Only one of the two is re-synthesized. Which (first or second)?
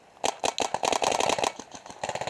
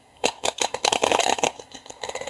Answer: second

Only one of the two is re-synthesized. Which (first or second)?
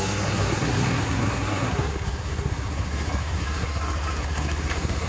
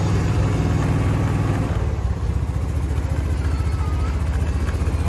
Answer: first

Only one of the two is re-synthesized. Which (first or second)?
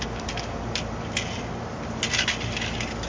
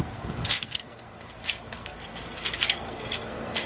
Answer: second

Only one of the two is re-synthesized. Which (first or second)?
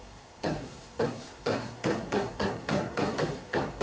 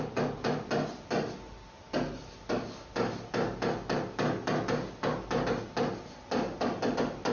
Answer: first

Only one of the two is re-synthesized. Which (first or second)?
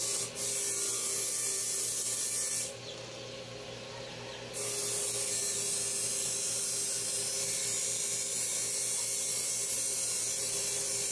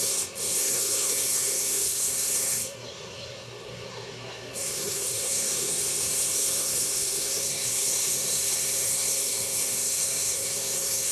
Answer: second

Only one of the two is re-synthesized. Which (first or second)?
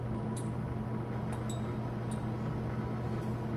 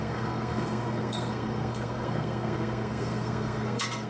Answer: second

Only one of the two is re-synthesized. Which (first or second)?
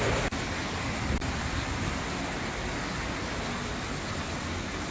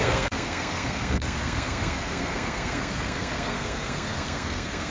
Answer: second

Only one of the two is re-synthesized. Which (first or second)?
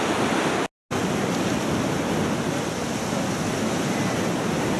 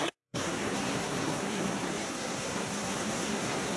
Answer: second